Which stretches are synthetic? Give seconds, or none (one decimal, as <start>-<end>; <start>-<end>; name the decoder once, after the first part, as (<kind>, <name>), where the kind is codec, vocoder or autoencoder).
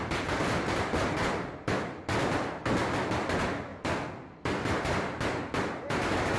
none